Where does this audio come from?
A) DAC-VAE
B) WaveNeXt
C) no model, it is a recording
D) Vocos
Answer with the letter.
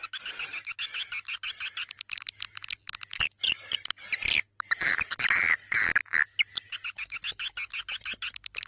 C